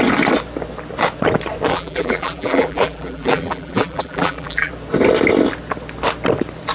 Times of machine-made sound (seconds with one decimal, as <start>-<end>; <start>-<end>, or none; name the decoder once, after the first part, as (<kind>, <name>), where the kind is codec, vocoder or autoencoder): 1.7-4.7 (vocoder, BigVGAN v2)